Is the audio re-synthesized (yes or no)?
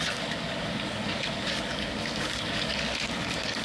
yes